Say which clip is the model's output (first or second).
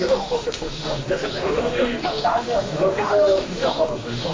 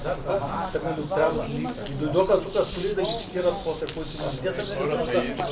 first